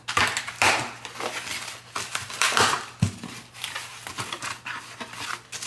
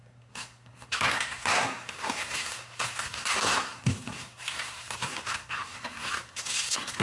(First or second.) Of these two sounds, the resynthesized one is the second